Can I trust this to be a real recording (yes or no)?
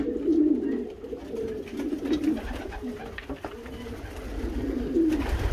yes